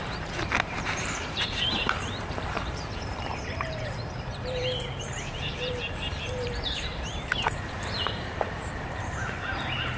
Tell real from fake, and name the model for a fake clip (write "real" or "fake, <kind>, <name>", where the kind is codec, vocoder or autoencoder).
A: fake, vocoder, BigVGAN v2